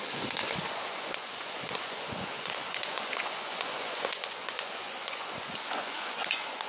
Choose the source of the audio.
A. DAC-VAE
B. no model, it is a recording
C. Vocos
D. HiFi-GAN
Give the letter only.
C